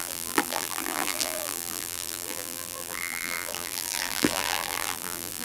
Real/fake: fake